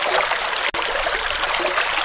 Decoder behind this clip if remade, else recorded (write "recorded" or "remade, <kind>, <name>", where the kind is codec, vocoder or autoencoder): recorded